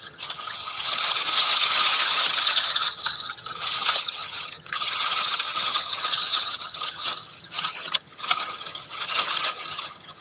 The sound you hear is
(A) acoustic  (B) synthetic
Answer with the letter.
B